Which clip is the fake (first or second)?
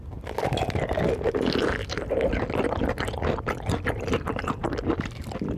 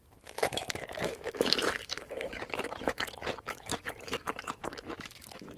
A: second